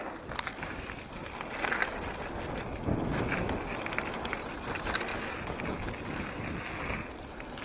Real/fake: real